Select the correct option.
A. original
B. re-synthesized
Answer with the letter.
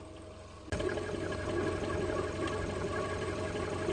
A